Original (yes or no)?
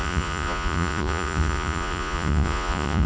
no